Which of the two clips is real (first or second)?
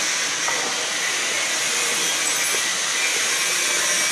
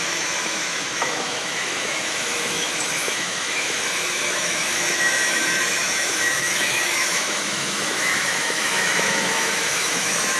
first